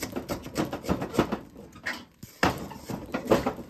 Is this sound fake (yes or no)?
no